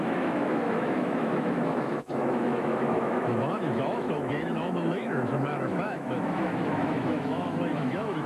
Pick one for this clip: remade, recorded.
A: remade